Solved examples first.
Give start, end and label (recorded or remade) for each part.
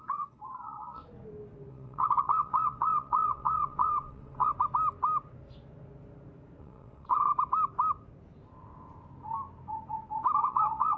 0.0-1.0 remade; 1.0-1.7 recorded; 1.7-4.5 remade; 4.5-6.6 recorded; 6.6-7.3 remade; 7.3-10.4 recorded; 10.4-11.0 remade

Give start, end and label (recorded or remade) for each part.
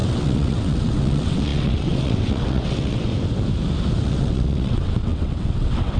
0.0-3.1 remade; 3.1-4.0 recorded; 4.0-6.0 remade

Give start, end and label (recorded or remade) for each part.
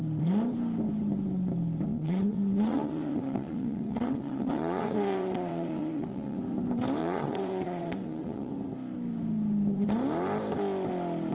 0.0-1.9 recorded; 1.9-6.4 remade; 6.4-7.0 recorded; 7.0-8.5 remade; 8.5-11.3 recorded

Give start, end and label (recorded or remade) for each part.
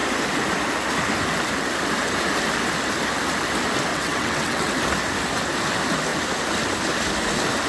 0.0-3.9 recorded; 3.9-4.7 remade; 4.7-7.7 recorded